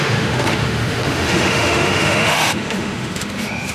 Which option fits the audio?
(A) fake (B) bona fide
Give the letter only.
A